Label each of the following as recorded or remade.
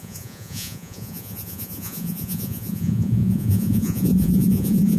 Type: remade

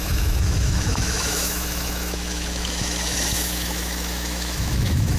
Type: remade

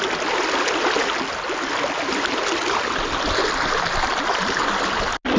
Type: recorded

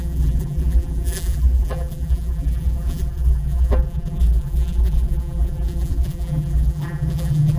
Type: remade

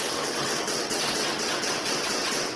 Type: remade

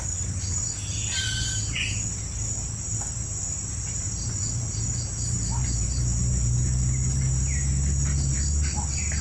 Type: recorded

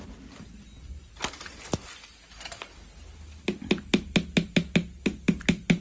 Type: recorded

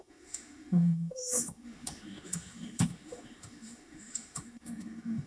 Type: remade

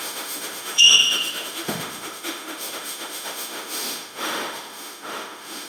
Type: remade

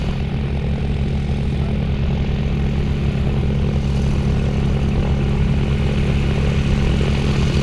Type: recorded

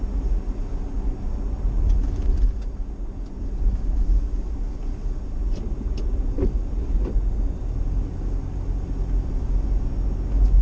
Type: recorded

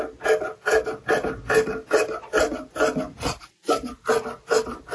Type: recorded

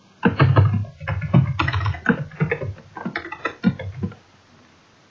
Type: recorded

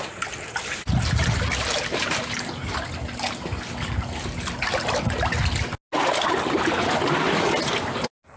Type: recorded